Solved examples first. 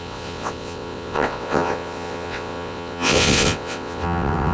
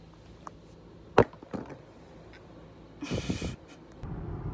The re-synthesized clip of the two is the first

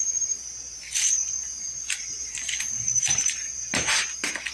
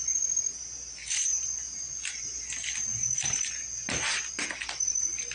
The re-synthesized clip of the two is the first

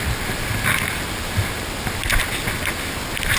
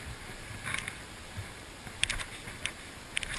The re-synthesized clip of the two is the second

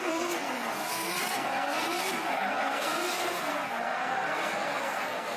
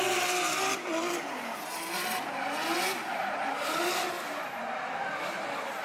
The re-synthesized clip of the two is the first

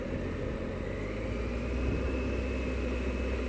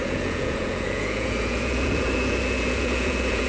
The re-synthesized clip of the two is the second